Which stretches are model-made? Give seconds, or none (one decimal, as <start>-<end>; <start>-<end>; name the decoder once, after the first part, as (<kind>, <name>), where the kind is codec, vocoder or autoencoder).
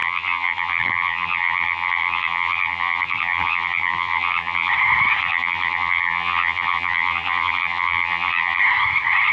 0.0-4.7 (vocoder, BigVGAN v2); 5.2-8.6